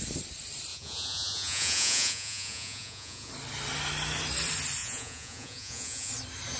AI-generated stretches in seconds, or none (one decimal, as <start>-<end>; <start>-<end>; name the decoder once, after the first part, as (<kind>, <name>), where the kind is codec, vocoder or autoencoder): 0.7-3.3 (vocoder, Vocos); 4.8-6.1